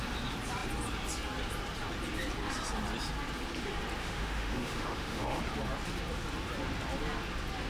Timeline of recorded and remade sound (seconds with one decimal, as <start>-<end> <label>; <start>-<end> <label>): 0.0-4.0 recorded; 4.0-5.4 remade; 5.4-7.7 recorded

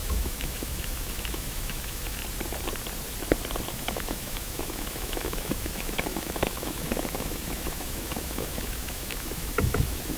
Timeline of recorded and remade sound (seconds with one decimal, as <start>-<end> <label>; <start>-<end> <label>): 0.0-2.2 remade; 2.2-3.7 recorded; 3.7-10.2 remade

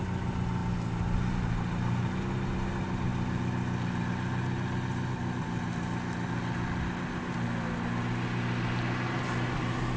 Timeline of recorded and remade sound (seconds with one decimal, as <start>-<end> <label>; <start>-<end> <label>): 0.0-10.0 recorded

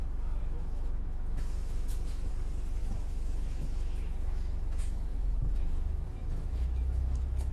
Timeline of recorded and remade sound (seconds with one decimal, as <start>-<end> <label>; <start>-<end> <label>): 0.0-0.4 recorded; 0.4-2.3 remade; 2.3-2.8 recorded; 2.8-7.5 remade

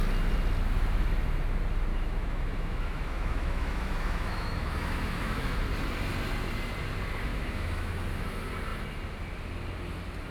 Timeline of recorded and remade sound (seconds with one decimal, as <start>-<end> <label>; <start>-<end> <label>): 0.0-1.9 recorded; 1.9-5.6 remade; 5.6-7.3 recorded; 7.3-8.0 remade; 8.0-10.3 recorded

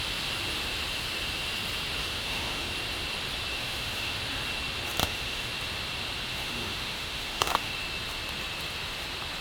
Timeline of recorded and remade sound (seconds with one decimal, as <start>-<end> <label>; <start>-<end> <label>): 0.0-2.0 recorded; 2.0-2.7 remade; 2.7-3.5 recorded; 3.5-4.2 remade; 4.2-5.0 recorded; 5.0-5.5 remade; 5.5-6.3 recorded; 6.3-7.7 remade; 7.7-9.4 recorded

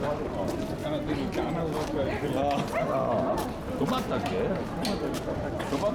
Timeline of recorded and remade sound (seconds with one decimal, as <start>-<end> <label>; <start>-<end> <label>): 0.0-5.9 recorded